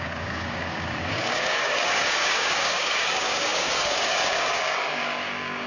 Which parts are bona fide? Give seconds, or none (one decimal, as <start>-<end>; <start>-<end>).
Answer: none